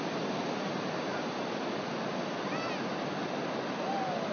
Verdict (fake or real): real